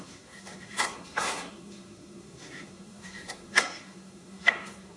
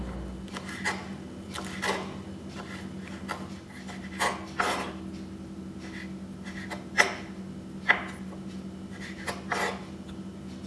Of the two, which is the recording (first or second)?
second